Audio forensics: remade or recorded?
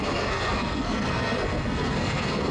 remade